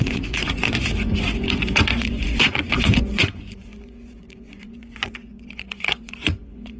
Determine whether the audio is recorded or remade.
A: remade